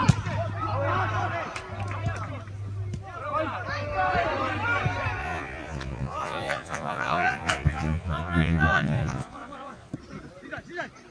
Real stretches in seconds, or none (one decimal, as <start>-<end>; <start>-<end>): 0.0-5.2; 9.9-11.1